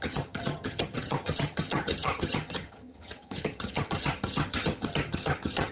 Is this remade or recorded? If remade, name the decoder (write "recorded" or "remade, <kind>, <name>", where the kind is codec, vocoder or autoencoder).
remade, vocoder, HiFi-GAN